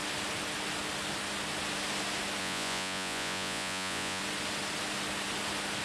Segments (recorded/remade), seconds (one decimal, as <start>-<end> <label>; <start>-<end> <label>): 0.0-2.4 recorded; 2.4-4.2 remade; 4.2-5.8 recorded